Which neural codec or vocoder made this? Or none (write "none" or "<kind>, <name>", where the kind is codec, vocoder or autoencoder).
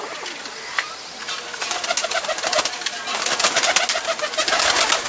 none